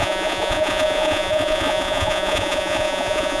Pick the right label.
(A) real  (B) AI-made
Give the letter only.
B